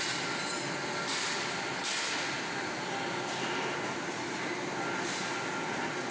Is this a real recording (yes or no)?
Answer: yes